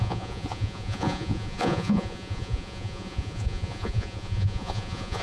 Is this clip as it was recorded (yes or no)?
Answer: no